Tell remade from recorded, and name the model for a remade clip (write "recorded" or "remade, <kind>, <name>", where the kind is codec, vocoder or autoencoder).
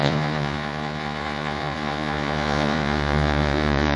remade, vocoder, Vocos